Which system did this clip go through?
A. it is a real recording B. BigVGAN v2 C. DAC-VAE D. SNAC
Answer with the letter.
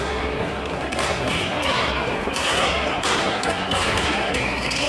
D